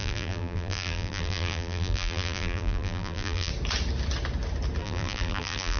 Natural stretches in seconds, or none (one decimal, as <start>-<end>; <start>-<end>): 3.5-4.8